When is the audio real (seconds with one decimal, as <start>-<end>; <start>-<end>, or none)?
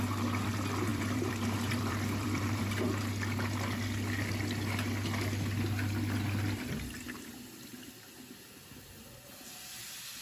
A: 0.0-0.9; 3.0-10.2